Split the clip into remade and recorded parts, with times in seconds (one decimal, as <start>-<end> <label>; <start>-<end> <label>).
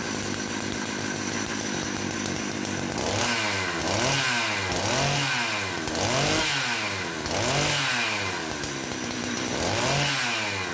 0.0-10.7 recorded